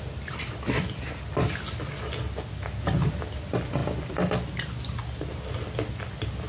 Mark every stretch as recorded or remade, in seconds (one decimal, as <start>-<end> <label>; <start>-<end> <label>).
0.0-6.5 recorded